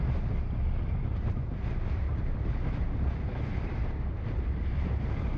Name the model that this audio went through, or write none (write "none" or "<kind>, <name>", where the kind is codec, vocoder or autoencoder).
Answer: none